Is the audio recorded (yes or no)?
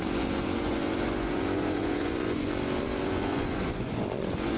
no